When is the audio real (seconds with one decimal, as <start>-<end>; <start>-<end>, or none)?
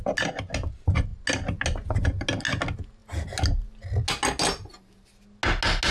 0.0-5.9